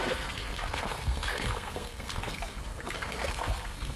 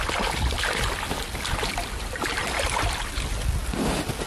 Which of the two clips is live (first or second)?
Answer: second